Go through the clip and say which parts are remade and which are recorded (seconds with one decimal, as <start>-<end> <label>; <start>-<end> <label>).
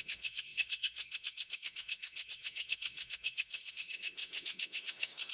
0.0-5.3 remade